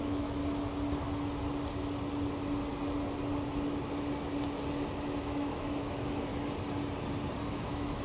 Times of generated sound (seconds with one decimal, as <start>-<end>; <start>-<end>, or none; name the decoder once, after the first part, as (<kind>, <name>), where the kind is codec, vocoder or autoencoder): 0.0-0.4 (autoencoder, DAC-VAE); 5.2-6.3; 7.5-8.0